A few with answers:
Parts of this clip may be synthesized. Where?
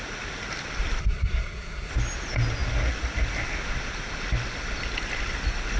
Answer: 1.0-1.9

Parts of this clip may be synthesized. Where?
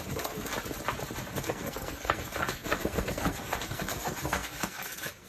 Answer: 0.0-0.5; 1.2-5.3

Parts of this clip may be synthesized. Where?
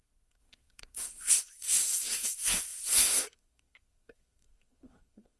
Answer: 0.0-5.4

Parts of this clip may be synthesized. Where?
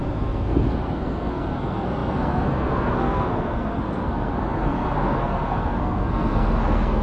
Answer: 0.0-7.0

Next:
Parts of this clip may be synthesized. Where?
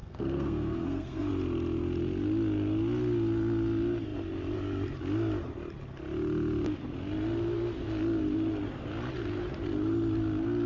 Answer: 0.0-1.3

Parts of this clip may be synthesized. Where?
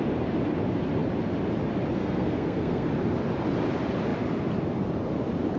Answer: 2.0-2.9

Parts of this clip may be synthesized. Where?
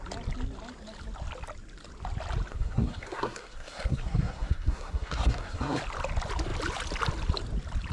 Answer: 2.5-5.8